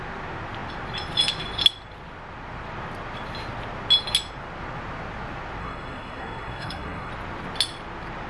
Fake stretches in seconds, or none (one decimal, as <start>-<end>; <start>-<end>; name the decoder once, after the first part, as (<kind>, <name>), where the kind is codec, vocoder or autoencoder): 5.6-7.1 (codec, SNAC)